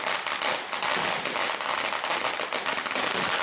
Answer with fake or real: real